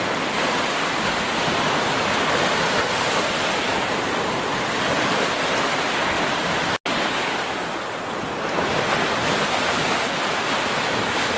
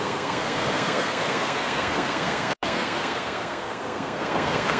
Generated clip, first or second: second